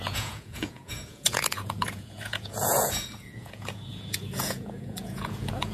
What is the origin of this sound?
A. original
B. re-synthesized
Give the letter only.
B